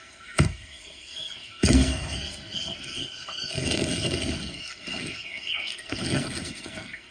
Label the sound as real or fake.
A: fake